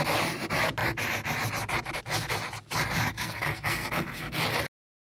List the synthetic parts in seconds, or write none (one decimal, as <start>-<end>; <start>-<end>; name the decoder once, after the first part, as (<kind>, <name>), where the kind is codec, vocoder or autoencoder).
3.1-4.4 (codec, SNAC)